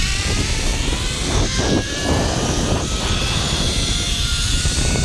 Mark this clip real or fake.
fake